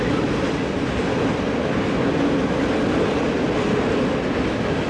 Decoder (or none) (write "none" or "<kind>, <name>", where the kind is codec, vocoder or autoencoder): none